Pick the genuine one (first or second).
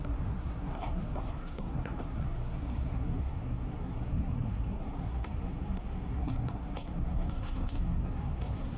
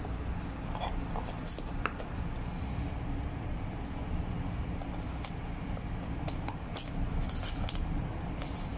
second